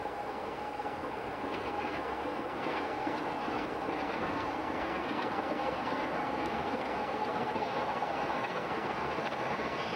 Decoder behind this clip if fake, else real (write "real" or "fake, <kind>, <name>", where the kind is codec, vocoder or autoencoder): fake, codec, SNAC